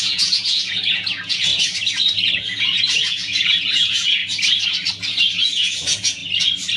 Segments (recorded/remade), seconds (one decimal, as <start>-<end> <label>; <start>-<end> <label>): 0.0-1.5 remade; 1.5-2.3 recorded; 2.3-4.2 remade; 4.2-5.4 recorded; 5.4-6.2 remade; 6.2-6.8 recorded